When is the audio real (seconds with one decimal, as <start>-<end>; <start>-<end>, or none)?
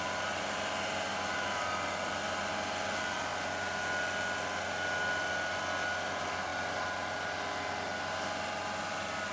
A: 0.0-1.1; 1.6-9.3